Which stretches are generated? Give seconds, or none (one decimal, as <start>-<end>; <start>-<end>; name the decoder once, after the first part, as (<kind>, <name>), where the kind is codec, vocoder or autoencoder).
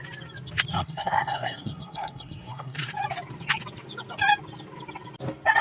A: 0.7-2.9 (codec, SNAC)